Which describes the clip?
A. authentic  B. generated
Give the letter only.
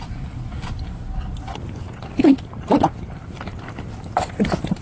A